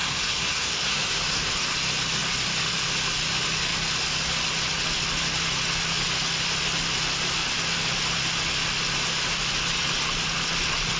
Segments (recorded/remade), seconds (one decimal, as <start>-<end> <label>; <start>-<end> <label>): 0.0-1.5 remade; 1.5-11.0 recorded